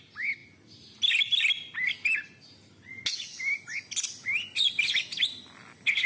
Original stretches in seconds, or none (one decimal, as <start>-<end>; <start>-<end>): 0.0-6.1